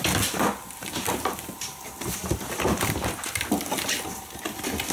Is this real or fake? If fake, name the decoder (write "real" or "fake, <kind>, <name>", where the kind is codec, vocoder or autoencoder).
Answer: real